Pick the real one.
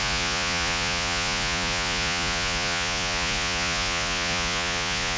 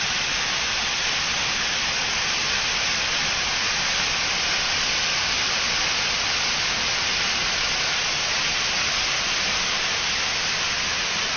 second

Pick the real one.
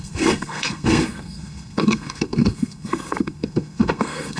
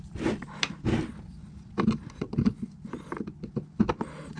second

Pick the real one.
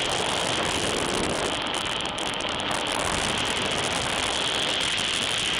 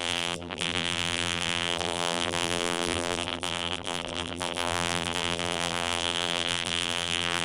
first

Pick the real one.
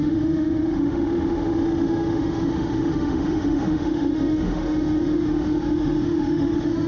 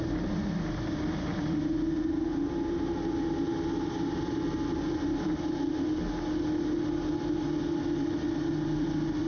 second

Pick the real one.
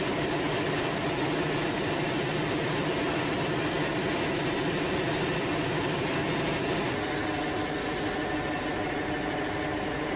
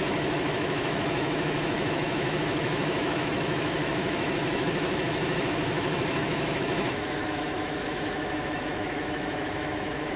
first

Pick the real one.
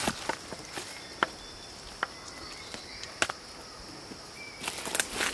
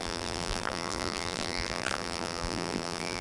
first